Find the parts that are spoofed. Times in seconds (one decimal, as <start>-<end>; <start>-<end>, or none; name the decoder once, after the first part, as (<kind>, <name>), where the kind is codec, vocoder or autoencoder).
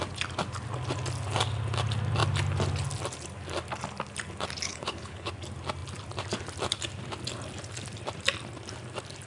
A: 4.7-5.3 (codec, HILCodec)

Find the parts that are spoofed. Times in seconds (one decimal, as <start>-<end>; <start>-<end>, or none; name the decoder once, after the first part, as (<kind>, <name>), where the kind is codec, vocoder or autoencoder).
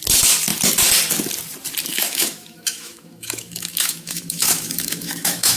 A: 1.9-5.6 (autoencoder, DAC-VAE)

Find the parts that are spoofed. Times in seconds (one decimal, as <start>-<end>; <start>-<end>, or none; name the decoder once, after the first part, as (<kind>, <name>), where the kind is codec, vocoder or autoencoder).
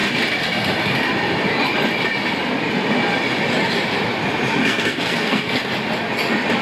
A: 4.6-5.7 (codec, SNAC)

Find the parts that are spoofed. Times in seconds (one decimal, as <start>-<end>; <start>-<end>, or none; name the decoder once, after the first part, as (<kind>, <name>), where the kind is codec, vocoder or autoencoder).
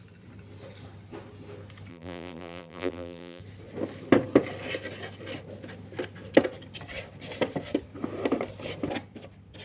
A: 1.9-3.4 (vocoder, BigVGAN v2)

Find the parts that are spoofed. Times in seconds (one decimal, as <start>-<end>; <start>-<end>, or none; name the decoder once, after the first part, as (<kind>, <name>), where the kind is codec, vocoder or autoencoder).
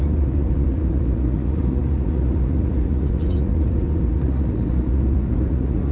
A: 0.0-5.9 (vocoder, Vocos)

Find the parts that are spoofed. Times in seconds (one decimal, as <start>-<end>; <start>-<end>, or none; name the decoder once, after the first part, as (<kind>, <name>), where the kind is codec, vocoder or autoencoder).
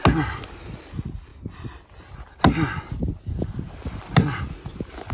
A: none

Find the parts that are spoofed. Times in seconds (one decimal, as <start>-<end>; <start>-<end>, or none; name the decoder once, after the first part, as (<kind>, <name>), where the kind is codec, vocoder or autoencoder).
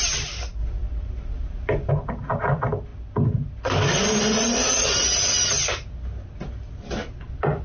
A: none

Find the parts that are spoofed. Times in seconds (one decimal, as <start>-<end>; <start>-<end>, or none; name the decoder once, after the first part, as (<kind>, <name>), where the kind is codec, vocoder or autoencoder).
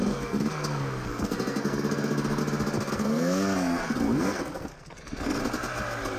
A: 0.0-2.4 (codec, SNAC); 2.9-5.4